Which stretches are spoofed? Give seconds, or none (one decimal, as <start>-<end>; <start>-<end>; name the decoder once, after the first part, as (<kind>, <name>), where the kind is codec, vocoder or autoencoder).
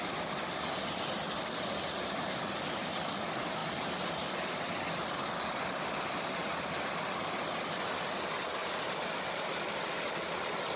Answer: 8.6-10.0 (vocoder, BigVGAN v2)